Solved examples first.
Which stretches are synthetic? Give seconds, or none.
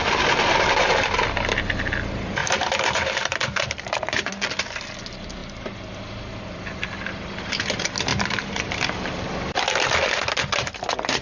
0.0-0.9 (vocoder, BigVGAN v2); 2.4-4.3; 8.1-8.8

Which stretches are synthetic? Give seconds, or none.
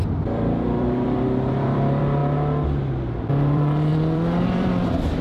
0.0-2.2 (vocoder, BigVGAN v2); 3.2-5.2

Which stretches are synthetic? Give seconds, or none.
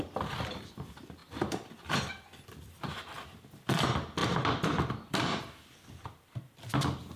0.0-7.2 (vocoder, BigVGAN v2)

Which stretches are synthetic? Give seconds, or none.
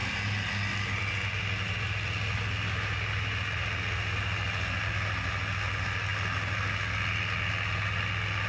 none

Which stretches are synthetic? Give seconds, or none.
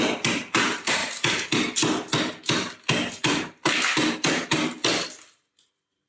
0.0-1.0 (vocoder, BigVGAN v2); 4.1-4.8; 5.3-6.1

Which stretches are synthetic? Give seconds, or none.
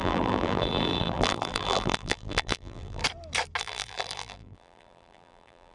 0.0-3.0 (vocoder, BigVGAN v2); 3.6-5.7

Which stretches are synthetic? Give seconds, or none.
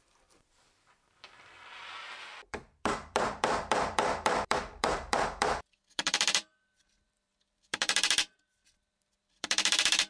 0.0-10.1 (vocoder, BigVGAN v2)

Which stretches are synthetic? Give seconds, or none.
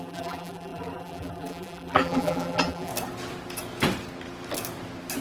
0.0-2.9 (vocoder, BigVGAN v2)